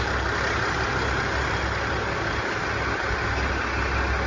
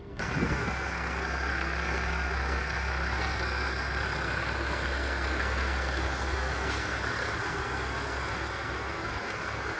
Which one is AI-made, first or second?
second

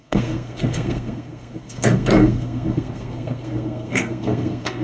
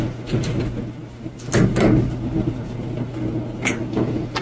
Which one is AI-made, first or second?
first